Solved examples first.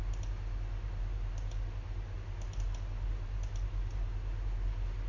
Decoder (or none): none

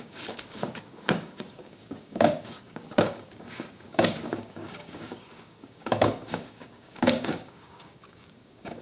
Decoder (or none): codec, DAC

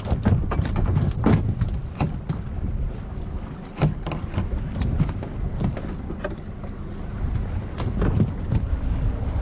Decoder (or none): none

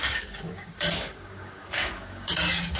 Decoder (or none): codec, DAC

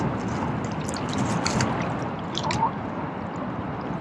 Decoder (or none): none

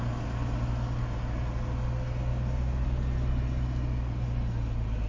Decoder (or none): none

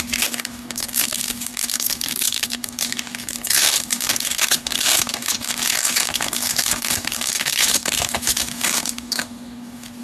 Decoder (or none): codec, DAC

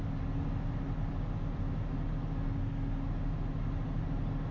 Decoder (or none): none